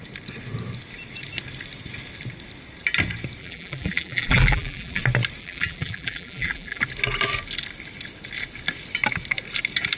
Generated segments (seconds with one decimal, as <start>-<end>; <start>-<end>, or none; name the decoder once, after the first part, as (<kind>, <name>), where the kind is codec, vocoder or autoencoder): 3.4-5.0 (vocoder, BigVGAN v2); 5.4-6.8